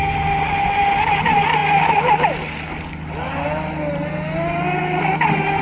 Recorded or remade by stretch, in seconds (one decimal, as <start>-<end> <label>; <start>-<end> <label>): 0.0-5.6 recorded